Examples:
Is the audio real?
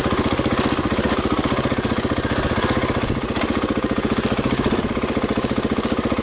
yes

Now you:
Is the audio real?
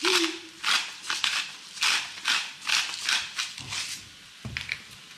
yes